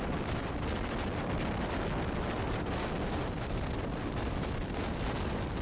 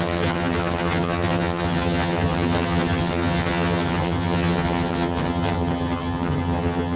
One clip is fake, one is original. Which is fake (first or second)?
second